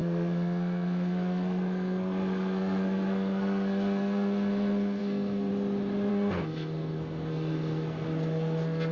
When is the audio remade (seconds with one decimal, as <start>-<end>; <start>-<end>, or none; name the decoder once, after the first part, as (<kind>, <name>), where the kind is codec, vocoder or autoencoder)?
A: 0.0-5.5 (codec, SNAC); 6.1-8.9